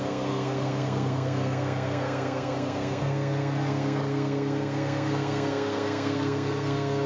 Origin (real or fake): fake